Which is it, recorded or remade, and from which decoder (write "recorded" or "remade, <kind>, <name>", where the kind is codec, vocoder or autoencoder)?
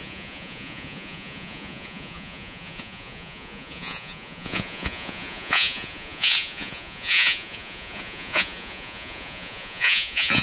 remade, vocoder, Vocos